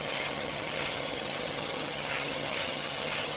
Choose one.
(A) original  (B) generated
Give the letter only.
B